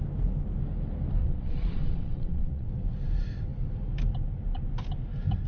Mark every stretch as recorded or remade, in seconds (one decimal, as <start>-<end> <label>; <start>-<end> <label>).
0.0-1.2 recorded; 1.2-2.7 remade; 2.7-5.5 recorded